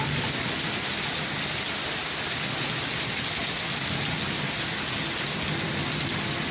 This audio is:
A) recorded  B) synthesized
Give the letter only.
A